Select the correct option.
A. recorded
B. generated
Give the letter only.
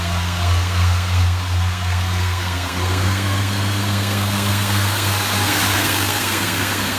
B